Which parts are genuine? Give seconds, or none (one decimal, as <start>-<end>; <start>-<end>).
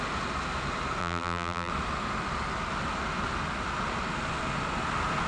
0.0-1.0; 1.7-5.3